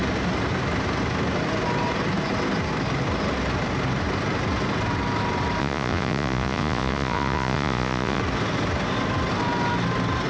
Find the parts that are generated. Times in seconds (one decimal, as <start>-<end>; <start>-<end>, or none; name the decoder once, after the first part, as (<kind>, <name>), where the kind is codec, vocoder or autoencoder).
5.6-8.2 (vocoder, Vocos)